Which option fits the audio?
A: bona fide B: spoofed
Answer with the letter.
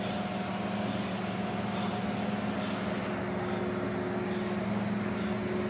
A